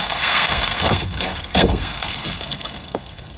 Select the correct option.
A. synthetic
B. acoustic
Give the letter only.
A